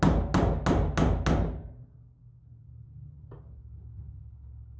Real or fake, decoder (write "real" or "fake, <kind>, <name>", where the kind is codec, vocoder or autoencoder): real